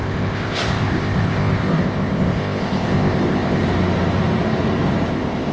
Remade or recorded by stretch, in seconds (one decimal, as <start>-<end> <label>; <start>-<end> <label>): 0.0-3.6 remade; 3.6-5.1 recorded; 5.1-5.5 remade

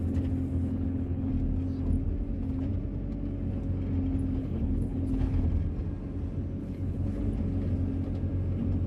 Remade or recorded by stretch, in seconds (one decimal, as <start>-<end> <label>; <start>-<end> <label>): 0.0-0.5 recorded; 0.5-1.3 remade; 1.3-4.4 recorded; 4.4-5.4 remade; 5.4-6.6 recorded; 6.6-7.2 remade; 7.2-8.9 recorded

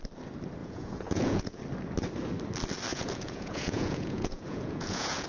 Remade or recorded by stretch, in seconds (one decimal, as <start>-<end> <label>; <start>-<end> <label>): 0.0-0.6 recorded; 0.6-1.6 remade; 1.6-2.9 recorded; 2.9-5.3 remade

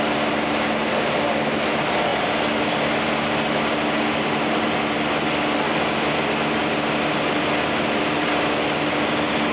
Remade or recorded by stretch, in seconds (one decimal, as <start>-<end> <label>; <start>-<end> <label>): 0.0-9.5 recorded

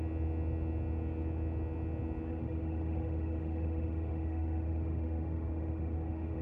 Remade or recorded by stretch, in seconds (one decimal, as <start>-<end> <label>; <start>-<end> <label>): 0.0-2.3 recorded; 2.3-6.4 remade

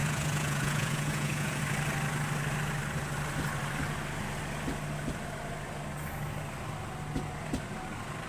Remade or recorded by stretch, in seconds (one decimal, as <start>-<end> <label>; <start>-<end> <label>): 0.0-1.6 remade; 1.6-8.3 recorded

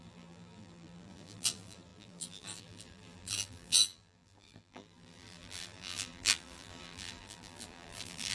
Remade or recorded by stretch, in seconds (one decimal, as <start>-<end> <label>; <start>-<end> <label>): 0.0-8.3 remade